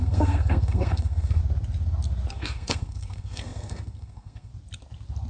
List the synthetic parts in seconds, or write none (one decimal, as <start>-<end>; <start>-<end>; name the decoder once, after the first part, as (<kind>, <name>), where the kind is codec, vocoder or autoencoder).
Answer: 0.0-1.4 (codec, SNAC); 2.3-4.5